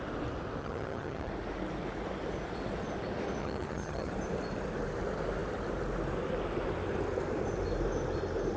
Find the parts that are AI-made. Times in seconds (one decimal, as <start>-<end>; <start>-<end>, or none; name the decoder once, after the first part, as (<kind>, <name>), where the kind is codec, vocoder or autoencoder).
0.6-1.3 (vocoder, HiFi-GAN); 3.4-4.1

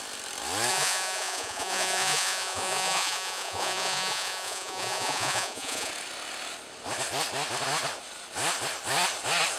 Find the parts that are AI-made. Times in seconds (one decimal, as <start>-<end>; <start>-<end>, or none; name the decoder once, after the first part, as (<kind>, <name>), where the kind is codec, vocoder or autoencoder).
0.7-5.9 (vocoder, Vocos)